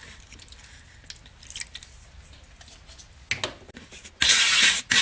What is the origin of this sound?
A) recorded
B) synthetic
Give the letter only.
A